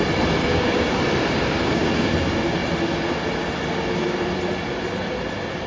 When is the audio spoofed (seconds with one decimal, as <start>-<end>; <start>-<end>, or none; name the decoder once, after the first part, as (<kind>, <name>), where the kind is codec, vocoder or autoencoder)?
0.4-0.9 (codec, DAC); 1.6-2.1